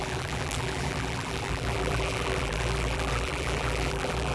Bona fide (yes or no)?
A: no